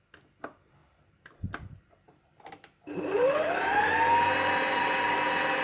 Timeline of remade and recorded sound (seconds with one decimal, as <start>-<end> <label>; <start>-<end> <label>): 0.0-0.8 recorded; 0.8-3.8 remade; 3.8-5.6 recorded